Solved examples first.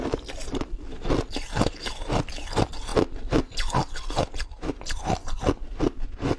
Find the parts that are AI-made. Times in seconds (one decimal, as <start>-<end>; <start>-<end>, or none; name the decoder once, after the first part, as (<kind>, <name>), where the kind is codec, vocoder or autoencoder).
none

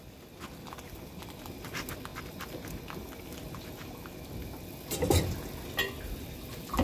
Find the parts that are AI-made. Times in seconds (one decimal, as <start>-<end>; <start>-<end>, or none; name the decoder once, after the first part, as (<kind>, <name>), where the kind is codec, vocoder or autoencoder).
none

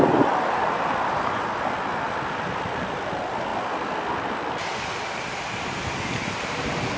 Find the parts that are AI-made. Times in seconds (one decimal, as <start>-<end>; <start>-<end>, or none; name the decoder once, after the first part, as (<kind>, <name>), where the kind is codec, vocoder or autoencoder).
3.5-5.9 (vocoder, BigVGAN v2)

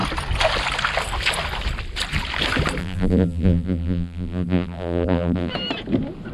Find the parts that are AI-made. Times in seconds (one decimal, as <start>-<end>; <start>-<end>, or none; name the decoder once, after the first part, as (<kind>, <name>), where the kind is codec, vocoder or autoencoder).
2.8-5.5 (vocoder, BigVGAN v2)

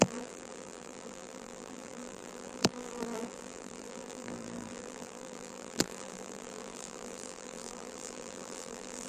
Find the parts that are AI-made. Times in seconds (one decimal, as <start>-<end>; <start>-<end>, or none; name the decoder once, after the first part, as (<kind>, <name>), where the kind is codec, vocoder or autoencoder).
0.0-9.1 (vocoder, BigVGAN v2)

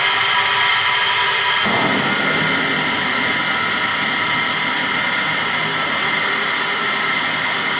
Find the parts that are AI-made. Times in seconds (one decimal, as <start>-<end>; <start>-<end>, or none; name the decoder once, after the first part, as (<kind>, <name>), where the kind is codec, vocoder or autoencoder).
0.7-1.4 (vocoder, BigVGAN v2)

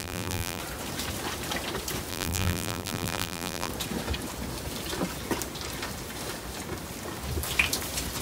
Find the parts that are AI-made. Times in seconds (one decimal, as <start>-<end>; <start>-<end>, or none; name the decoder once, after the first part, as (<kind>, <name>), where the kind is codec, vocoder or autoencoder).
0.0-0.6 (vocoder, BigVGAN v2); 2.1-3.7